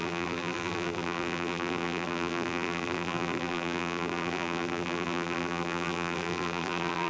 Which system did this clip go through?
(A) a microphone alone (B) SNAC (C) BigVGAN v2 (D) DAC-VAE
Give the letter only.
C